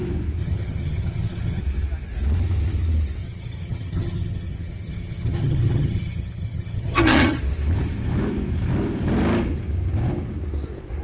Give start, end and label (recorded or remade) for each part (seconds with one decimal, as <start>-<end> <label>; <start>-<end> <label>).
0.0-0.4 recorded; 0.4-1.6 remade; 1.6-3.2 recorded; 3.2-7.4 remade; 7.4-11.0 recorded